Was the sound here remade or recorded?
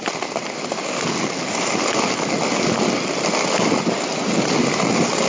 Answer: recorded